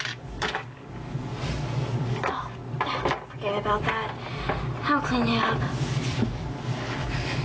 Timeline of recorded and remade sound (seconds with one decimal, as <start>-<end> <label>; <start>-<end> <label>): 0.0-1.3 remade; 1.3-2.0 recorded; 2.0-2.6 remade; 2.6-5.6 recorded; 5.6-7.4 remade